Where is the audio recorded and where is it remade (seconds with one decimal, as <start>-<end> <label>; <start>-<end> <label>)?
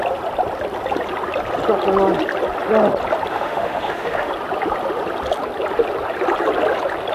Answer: 0.0-3.3 recorded; 3.3-4.3 remade; 4.3-7.1 recorded